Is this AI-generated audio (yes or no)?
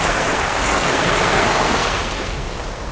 yes